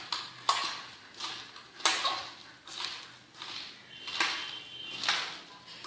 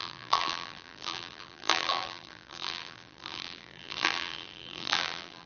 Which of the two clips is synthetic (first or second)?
second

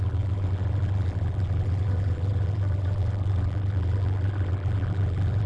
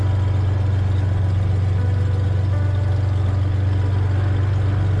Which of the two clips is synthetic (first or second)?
first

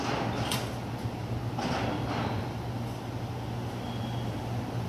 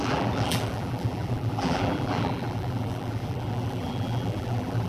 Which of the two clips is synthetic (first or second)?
second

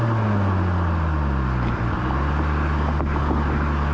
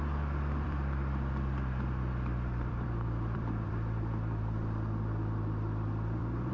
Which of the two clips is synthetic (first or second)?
second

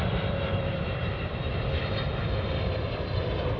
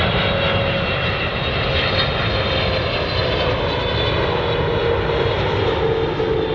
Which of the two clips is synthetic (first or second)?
first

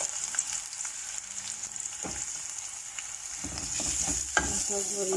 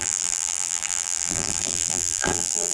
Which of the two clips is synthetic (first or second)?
second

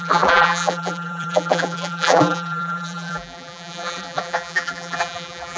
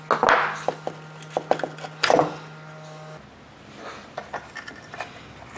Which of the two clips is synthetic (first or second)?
first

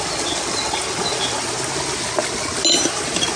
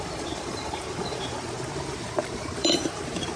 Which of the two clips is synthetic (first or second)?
second